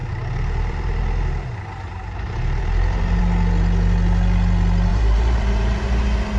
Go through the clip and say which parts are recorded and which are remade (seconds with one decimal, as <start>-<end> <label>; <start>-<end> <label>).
0.0-3.2 remade; 3.2-4.9 recorded; 4.9-6.4 remade

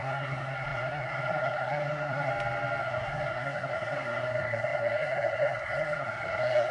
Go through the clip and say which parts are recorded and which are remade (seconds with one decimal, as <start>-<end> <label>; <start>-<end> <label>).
0.0-2.3 remade; 2.3-2.8 recorded; 2.8-6.7 remade

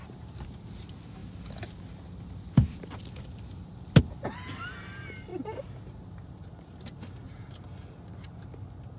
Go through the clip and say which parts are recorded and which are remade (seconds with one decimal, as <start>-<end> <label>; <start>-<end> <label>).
0.0-9.0 recorded

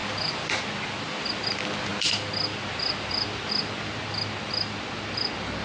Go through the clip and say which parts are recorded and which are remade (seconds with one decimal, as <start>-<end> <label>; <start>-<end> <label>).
0.0-5.6 recorded